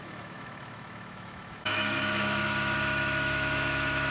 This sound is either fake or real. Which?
fake